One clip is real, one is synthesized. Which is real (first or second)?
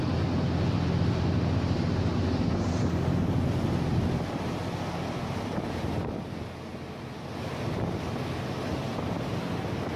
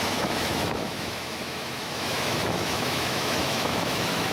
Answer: first